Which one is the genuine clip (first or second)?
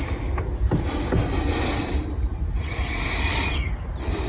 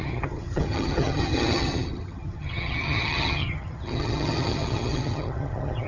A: first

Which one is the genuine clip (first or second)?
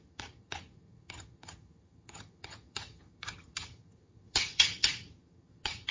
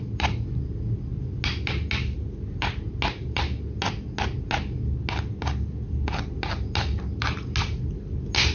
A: second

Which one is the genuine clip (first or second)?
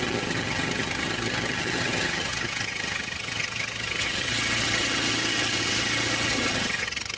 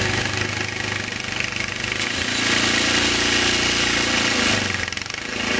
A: second